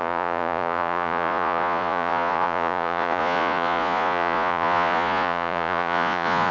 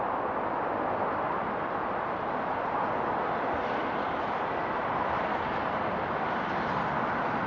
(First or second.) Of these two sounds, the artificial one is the first